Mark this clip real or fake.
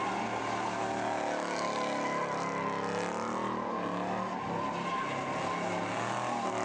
real